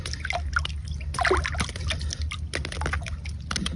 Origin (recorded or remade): recorded